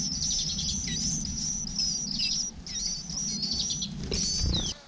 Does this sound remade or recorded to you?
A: recorded